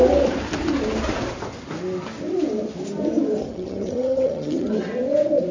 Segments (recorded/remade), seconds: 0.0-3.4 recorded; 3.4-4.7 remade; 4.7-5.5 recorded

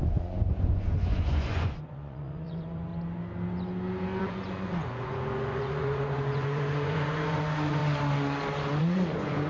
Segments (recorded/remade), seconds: 0.0-2.9 remade; 2.9-4.2 recorded; 4.2-7.8 remade; 7.8-8.8 recorded; 8.8-9.5 remade

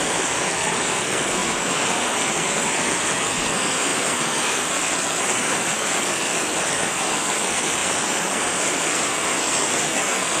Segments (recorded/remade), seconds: 0.0-10.4 remade

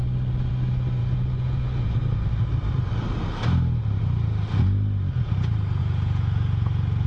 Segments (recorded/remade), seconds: 0.0-1.0 recorded; 1.0-1.9 remade; 1.9-5.8 recorded; 5.8-7.1 remade

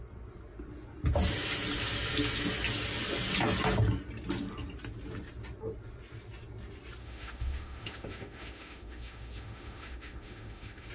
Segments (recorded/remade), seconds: 0.0-7.0 recorded; 7.0-10.9 remade

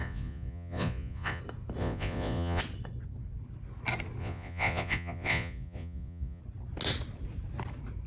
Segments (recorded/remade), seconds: 0.0-1.4 remade; 1.4-1.8 recorded; 1.8-2.6 remade; 2.6-4.2 recorded; 4.2-6.4 remade; 6.4-8.1 recorded

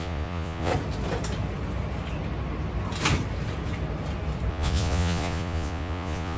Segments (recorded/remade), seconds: 0.0-0.7 remade; 0.7-4.5 recorded; 4.5-6.4 remade